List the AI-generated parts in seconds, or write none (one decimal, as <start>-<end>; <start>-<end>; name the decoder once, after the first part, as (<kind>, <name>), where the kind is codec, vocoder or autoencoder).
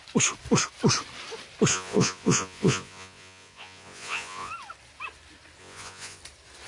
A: 1.7-4.5 (vocoder, Vocos); 5.6-6.2